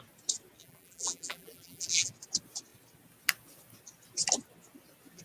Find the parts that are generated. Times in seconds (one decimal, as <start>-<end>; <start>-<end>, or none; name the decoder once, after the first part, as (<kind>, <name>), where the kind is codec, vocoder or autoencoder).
0.6-2.1 (vocoder, BigVGAN v2)